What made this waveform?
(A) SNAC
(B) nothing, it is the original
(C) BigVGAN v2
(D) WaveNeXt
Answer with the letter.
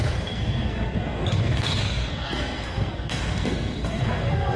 A